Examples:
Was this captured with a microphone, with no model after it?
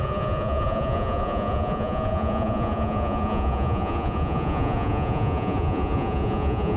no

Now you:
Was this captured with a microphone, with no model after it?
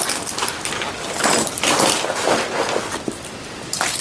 yes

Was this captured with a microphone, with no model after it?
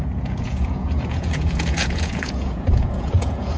no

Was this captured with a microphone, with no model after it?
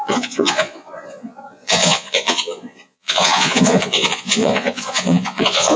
no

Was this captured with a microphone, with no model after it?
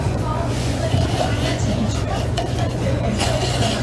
no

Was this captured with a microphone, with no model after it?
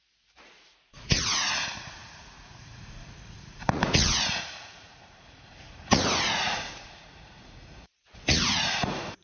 no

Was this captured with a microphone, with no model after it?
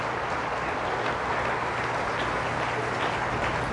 yes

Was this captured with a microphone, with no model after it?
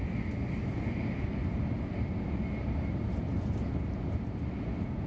yes